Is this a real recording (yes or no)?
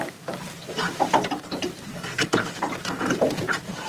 no